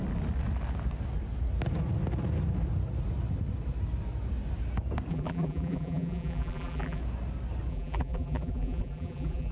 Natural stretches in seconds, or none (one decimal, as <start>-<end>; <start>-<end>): 0.0-5.1; 7.0-7.7